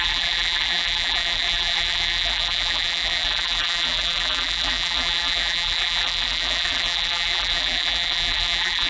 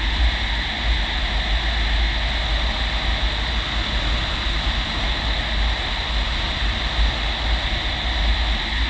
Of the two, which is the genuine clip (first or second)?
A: second